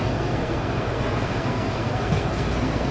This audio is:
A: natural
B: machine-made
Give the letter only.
B